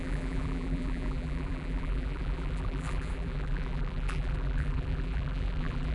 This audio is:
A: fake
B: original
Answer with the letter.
A